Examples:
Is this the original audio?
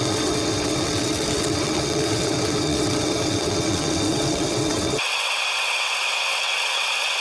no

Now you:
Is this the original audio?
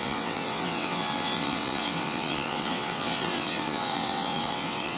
no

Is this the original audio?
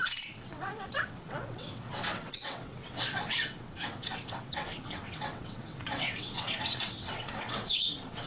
no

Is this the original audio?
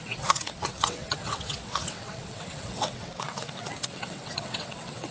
no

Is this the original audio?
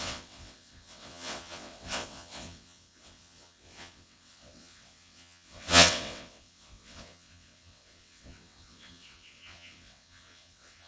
no